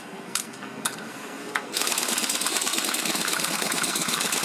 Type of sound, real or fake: fake